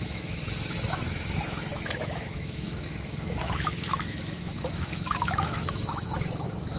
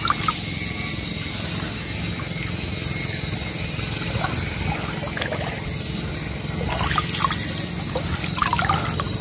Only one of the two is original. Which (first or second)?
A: second